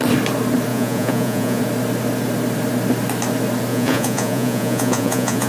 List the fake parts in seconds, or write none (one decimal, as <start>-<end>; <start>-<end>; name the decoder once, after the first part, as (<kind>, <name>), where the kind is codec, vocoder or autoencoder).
0.7-1.6 (vocoder, Vocos); 3.7-5.5